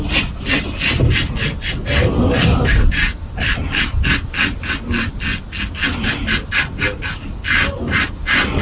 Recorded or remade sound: recorded